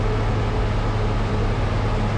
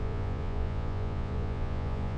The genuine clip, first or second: first